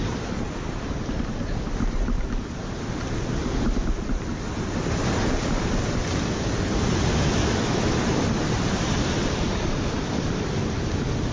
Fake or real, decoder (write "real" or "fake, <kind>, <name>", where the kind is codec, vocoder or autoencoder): real